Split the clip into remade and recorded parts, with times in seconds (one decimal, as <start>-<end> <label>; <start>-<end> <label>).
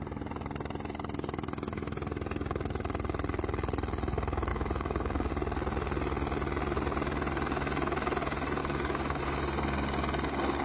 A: 0.0-4.5 recorded; 4.5-5.3 remade; 5.3-8.6 recorded; 8.6-9.2 remade; 9.2-10.6 recorded